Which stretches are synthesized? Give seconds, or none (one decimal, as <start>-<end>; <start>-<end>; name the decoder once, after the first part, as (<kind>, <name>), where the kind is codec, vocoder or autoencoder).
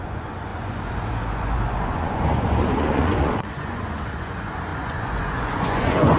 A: 0.0-6.2 (vocoder, Vocos)